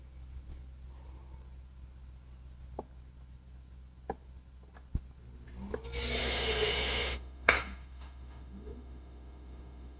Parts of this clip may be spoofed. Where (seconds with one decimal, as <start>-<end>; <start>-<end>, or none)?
6.2-10.0